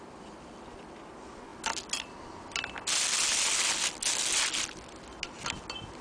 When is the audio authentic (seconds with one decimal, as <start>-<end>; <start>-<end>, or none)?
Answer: 0.0-6.0